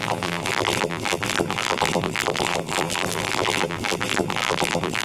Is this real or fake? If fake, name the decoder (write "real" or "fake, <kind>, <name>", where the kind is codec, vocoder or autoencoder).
fake, vocoder, BigVGAN v2